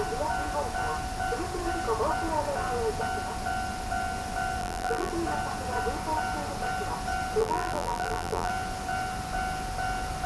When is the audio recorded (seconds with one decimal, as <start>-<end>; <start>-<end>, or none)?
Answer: 0.0-4.6; 5.1-7.4; 8.5-10.3